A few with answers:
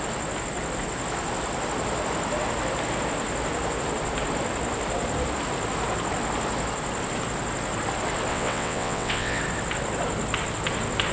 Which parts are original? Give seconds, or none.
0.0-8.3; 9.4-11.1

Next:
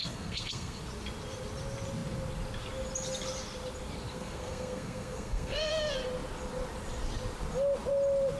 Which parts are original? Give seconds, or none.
0.8-4.1; 5.7-8.4

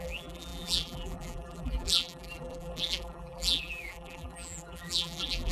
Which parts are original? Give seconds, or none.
none

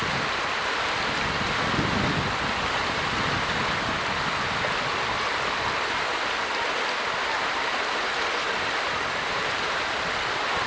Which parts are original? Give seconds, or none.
0.0-10.7

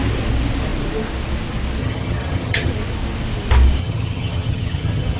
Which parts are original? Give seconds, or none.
0.0-1.8; 2.7-3.8

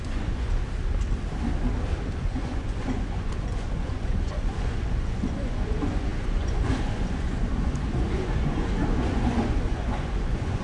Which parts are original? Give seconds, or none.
0.6-2.2

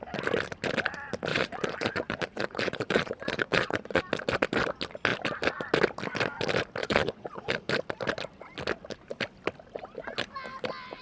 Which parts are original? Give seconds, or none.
0.0-1.3; 4.0-6.8; 7.6-11.0